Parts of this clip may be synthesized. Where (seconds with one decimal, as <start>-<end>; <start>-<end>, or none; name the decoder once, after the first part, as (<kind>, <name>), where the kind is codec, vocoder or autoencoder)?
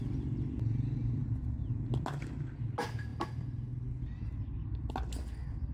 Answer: none